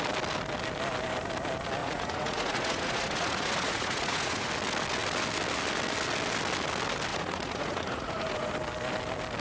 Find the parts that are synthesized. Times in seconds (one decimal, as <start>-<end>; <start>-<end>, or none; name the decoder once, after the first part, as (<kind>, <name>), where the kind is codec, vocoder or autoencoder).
1.8-4.5 (vocoder, Vocos); 7.1-8.5